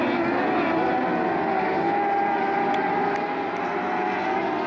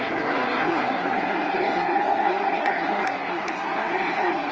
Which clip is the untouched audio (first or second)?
first